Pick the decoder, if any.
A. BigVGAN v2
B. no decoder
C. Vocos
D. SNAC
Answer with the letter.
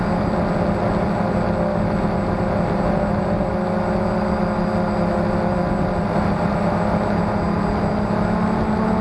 B